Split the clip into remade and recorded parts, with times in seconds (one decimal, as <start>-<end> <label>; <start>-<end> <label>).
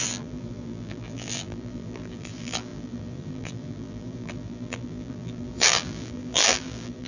0.0-7.1 remade